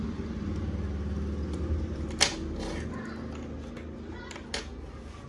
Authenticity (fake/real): real